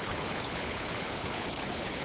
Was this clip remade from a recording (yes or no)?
yes